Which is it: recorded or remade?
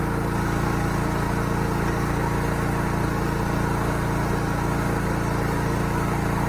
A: recorded